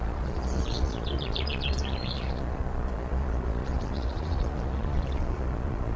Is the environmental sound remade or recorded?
remade